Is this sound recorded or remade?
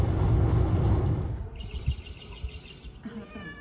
recorded